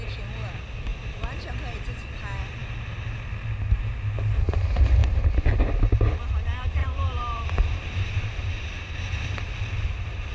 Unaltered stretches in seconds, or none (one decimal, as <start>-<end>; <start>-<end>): 0.0-0.9; 1.5-6.8; 9.4-10.3